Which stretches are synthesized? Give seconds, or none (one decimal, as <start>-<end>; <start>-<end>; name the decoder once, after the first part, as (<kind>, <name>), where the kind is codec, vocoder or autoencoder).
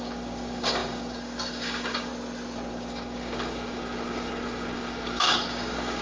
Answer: 0.0-2.1 (codec, DAC); 2.7-6.0